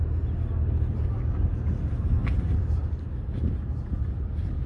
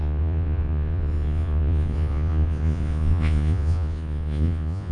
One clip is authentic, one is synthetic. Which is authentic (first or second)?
first